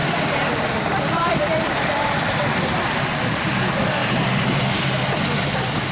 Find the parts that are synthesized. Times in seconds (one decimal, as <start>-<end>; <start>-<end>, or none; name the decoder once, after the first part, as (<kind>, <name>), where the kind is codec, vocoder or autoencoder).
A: 0.0-3.5 (vocoder, BigVGAN v2); 4.0-5.2

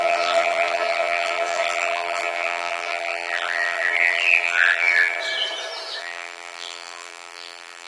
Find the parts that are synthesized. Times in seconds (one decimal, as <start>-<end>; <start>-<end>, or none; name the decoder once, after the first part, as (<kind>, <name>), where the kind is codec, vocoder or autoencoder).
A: 0.0-5.2 (vocoder, BigVGAN v2); 6.0-7.9